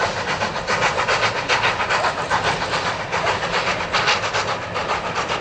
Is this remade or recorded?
recorded